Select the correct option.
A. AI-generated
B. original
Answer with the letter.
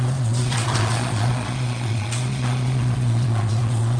A